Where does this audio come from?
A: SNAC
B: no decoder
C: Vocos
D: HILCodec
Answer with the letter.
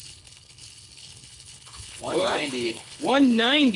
D